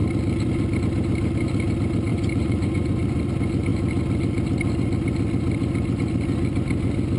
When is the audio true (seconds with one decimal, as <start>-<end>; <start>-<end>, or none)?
0.0-2.1; 3.3-7.2